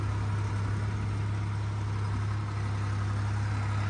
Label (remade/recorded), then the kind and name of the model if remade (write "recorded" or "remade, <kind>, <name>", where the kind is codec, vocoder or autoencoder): recorded